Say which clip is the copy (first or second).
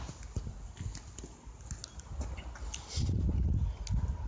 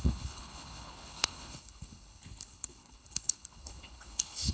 second